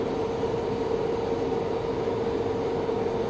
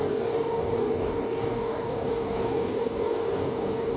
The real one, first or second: first